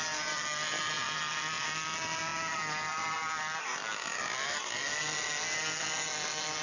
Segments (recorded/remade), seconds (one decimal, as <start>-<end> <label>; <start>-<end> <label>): 0.0-6.6 recorded